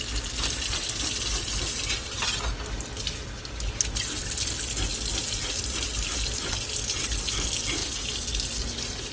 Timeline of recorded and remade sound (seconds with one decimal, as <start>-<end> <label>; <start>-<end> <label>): 0.0-9.1 recorded